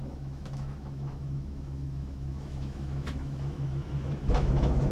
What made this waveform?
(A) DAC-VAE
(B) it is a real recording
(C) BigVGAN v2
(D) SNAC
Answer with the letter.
A